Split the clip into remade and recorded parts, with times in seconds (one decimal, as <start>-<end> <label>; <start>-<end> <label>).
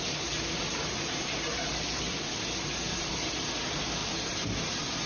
0.0-1.7 remade; 1.7-2.6 recorded; 2.6-5.1 remade